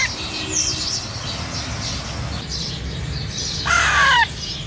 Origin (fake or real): real